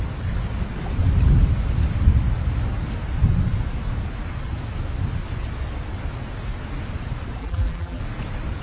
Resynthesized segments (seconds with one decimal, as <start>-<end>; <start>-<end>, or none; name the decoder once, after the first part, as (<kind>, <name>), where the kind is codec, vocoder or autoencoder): 7.4-8.0 (vocoder, BigVGAN v2)